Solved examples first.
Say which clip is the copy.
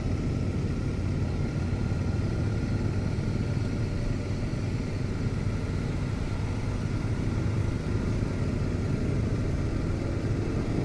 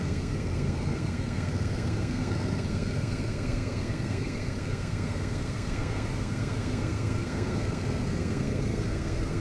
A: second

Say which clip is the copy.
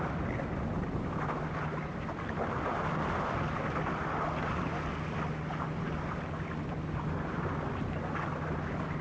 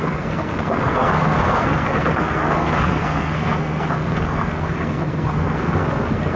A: second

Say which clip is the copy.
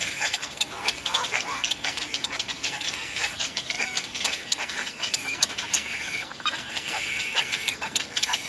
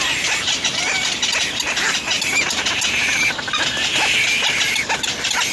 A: first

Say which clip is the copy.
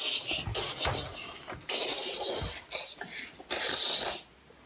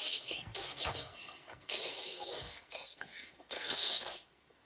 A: second